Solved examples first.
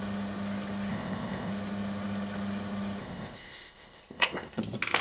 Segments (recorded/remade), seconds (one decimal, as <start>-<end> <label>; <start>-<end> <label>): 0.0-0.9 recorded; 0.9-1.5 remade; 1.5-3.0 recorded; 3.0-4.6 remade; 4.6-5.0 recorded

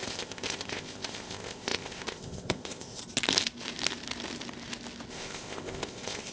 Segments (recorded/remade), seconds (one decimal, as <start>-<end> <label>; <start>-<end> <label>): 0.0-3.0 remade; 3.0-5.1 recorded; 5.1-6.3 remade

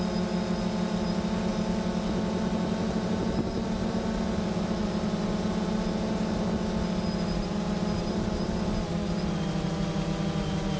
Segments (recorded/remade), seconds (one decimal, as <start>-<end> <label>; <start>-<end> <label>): 0.0-10.8 recorded